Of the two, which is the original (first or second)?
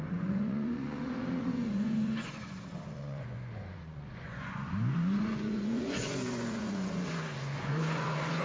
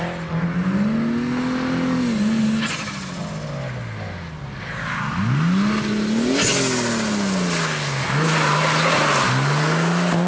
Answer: second